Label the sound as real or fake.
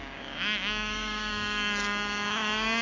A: fake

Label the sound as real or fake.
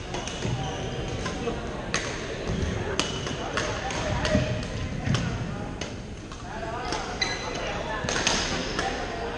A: real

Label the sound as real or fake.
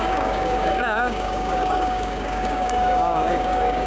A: fake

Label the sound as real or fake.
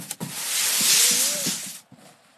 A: real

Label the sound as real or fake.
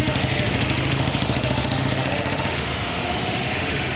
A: fake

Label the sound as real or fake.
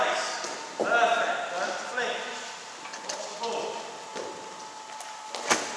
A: real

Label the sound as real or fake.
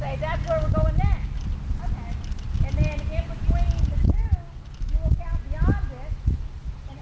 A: real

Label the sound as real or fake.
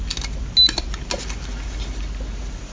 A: real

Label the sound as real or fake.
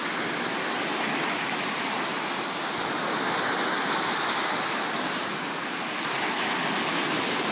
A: real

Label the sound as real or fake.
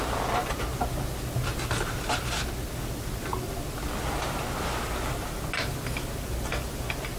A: real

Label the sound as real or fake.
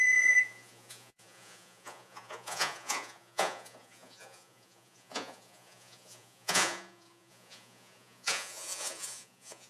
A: fake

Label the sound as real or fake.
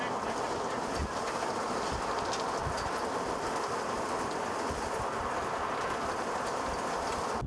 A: real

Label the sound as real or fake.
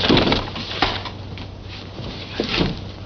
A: real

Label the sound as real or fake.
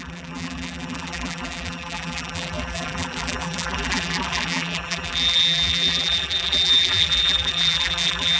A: fake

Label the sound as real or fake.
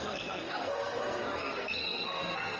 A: fake